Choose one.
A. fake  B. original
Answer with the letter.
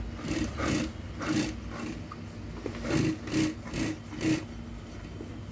B